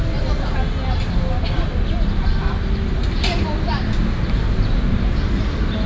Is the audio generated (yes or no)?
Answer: no